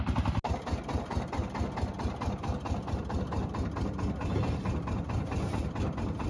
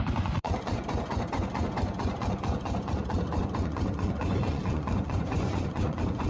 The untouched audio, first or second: first